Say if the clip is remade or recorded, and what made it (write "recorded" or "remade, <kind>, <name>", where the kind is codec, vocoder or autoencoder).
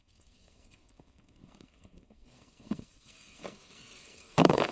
remade, codec, SNAC